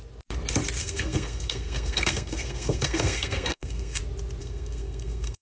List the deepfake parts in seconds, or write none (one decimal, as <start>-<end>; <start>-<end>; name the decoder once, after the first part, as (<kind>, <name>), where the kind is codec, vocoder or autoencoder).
0.8-4.0 (codec, SNAC); 4.4-5.4